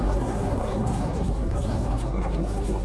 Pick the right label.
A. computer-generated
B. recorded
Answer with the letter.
A